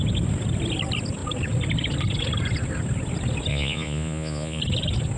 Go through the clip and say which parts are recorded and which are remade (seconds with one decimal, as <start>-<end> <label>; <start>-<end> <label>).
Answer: 0.0-3.5 recorded; 3.5-4.6 remade; 4.6-5.2 recorded